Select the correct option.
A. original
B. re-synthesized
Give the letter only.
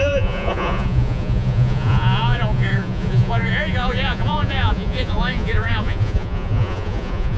B